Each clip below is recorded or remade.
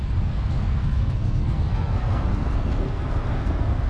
remade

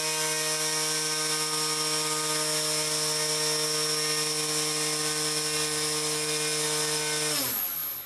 recorded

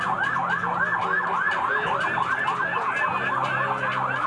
recorded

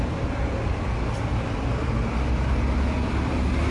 recorded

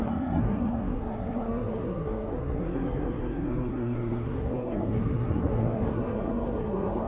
remade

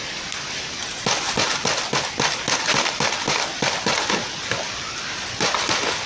recorded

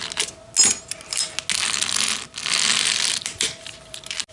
recorded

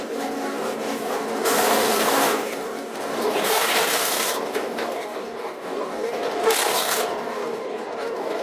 remade